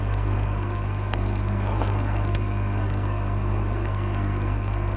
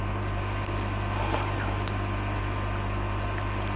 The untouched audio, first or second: second